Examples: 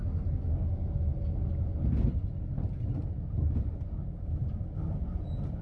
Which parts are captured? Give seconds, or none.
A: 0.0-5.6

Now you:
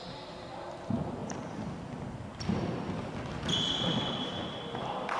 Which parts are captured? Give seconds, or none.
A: 0.0-5.2